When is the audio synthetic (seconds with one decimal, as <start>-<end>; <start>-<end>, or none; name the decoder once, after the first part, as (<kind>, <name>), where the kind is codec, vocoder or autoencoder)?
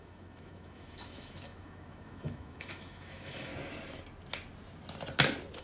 0.0-3.5 (autoencoder, DAC-VAE)